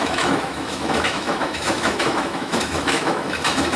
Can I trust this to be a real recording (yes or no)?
no